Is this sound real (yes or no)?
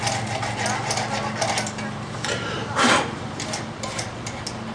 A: yes